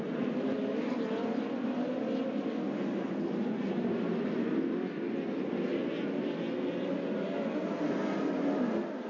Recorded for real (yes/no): yes